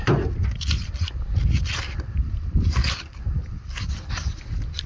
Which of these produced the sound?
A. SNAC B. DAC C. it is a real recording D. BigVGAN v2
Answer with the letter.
C